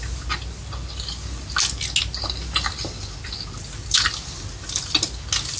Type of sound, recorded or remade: recorded